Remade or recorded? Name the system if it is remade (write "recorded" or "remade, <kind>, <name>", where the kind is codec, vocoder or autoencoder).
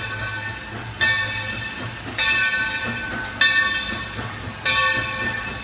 recorded